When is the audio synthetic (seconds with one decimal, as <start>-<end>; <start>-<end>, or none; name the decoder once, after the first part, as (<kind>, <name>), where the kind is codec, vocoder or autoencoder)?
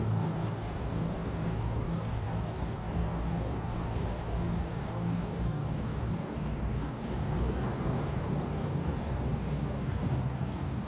0.0-10.9 (codec, DAC)